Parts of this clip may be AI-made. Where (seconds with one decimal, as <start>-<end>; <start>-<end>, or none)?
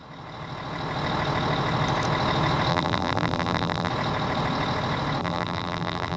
2.7-3.9; 5.2-6.2